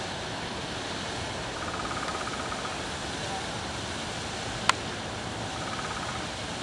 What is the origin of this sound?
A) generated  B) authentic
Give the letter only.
B